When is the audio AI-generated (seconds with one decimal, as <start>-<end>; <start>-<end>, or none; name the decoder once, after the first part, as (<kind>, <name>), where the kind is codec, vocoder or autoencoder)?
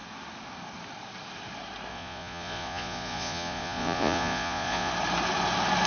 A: 1.9-4.9 (vocoder, Vocos)